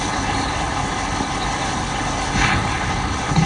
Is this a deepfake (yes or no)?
yes